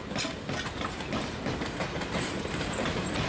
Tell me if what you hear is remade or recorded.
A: recorded